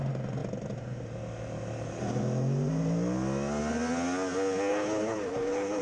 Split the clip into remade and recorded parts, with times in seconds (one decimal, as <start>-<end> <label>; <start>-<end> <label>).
0.0-4.7 recorded; 4.7-5.8 remade